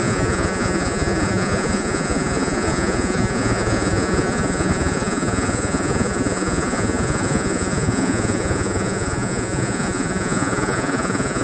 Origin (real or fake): fake